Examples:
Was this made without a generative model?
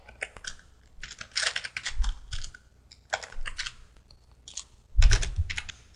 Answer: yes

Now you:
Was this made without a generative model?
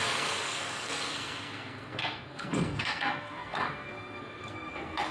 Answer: no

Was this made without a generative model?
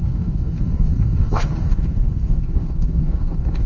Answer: no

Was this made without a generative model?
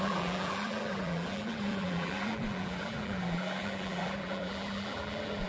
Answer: no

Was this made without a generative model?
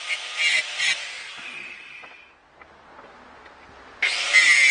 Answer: yes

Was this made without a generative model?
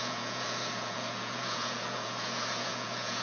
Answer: no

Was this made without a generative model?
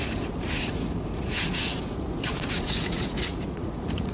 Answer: no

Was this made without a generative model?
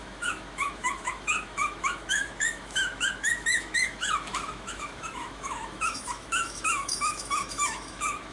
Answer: no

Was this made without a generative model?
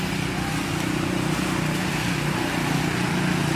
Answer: yes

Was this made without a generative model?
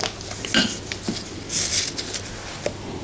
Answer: yes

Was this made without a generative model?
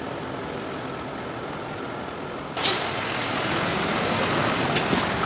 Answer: yes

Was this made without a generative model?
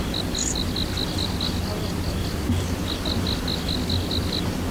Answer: yes